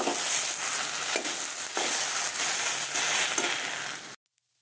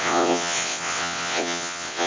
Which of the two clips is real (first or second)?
first